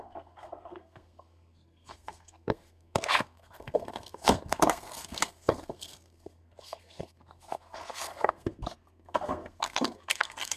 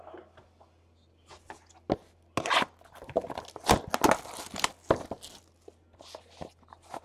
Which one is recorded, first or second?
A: second